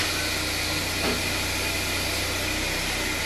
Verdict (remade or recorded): recorded